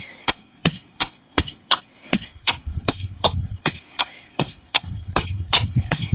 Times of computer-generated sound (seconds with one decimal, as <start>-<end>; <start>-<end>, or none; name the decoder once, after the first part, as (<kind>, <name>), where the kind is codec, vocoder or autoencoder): 0.0-6.1 (codec, SNAC)